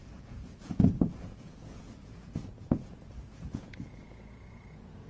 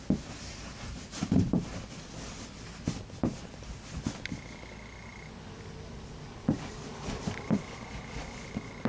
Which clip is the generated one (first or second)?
first